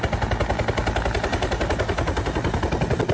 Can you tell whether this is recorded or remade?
recorded